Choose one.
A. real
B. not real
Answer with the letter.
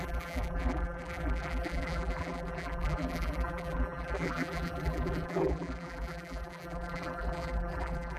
B